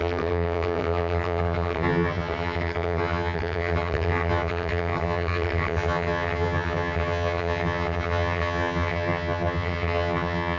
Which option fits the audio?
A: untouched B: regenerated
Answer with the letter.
B